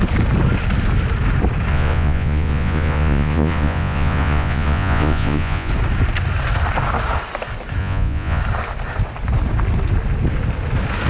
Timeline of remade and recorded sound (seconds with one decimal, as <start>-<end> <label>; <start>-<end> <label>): 0.0-1.7 recorded; 1.7-5.7 remade; 5.7-7.8 recorded; 7.8-8.4 remade; 8.4-11.1 recorded